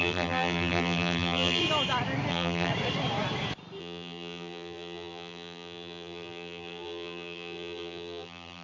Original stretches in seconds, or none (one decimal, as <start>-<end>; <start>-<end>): 1.6-2.3; 2.7-3.8

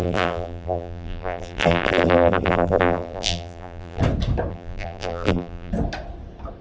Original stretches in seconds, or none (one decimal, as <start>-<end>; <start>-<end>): 4.0-4.5; 5.7-6.6